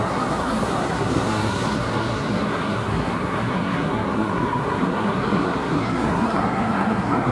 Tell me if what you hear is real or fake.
fake